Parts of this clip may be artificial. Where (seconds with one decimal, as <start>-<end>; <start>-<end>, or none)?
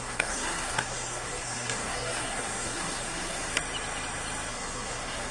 0.0-3.5; 4.5-5.3